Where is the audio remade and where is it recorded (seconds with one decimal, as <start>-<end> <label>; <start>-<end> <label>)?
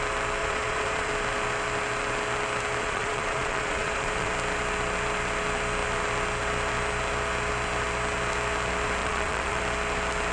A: 0.0-0.4 recorded; 0.4-1.1 remade; 1.1-2.8 recorded; 2.8-4.3 remade; 4.3-9.0 recorded; 9.0-9.6 remade; 9.6-10.3 recorded